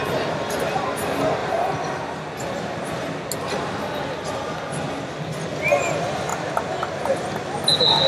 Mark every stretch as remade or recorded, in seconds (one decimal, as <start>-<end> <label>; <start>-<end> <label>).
0.0-8.1 recorded